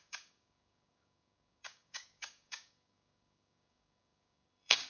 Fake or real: fake